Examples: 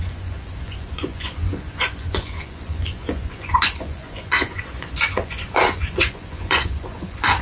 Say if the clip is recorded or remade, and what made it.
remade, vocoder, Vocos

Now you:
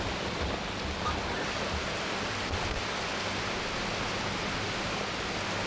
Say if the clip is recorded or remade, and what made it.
recorded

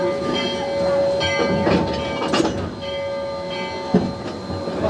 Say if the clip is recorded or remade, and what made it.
recorded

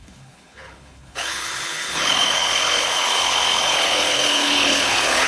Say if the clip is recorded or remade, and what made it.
remade, codec, HILCodec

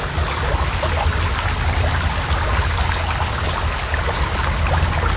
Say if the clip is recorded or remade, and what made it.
recorded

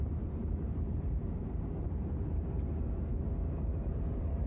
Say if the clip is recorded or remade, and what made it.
remade, vocoder, BigVGAN v2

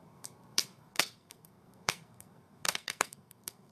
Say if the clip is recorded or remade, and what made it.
remade, codec, SNAC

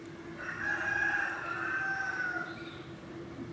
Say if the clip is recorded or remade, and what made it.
recorded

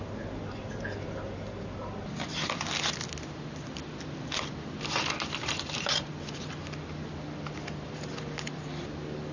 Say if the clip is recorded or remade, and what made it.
recorded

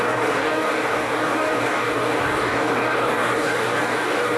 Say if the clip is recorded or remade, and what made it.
remade, codec, DAC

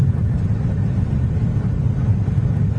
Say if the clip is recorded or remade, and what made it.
recorded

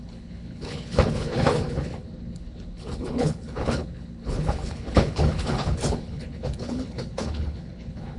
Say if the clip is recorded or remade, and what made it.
remade, codec, HILCodec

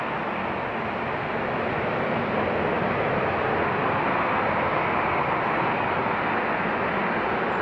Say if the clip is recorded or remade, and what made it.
recorded